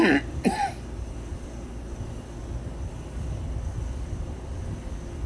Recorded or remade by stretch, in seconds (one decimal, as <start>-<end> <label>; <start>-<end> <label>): 0.0-5.3 recorded